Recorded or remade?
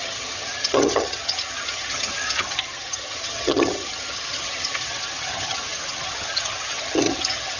remade